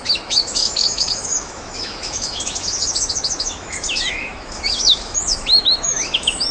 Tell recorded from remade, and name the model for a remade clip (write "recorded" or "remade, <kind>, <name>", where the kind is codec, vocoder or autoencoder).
remade, autoencoder, DAC-VAE